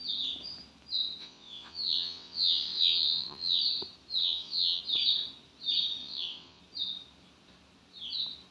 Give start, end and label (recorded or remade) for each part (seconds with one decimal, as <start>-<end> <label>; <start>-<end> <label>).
0.0-1.2 recorded; 1.2-3.6 remade; 3.6-4.2 recorded; 4.2-4.8 remade; 4.8-6.0 recorded; 6.0-6.6 remade; 6.6-8.5 recorded